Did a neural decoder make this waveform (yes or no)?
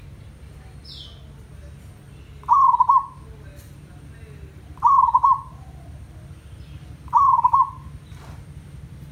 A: no